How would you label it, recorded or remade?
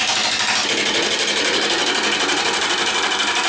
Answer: recorded